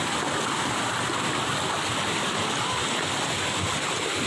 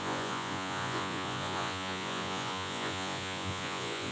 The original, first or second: first